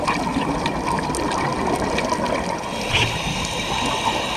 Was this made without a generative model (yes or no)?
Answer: yes